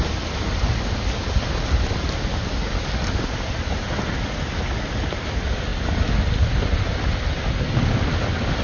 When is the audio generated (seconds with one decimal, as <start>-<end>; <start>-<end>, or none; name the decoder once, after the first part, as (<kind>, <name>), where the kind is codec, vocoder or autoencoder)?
none